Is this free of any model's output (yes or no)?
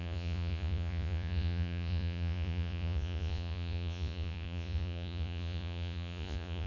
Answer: no